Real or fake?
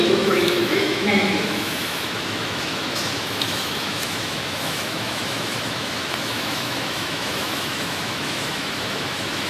fake